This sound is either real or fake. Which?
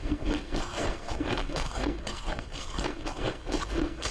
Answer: fake